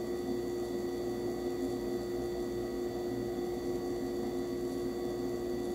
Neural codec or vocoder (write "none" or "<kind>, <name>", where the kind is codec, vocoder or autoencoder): none